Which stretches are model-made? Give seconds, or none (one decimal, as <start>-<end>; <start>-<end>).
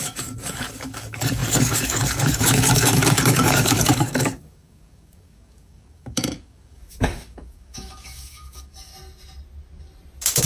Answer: 0.0-8.9